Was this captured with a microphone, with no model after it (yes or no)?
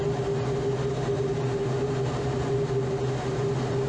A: yes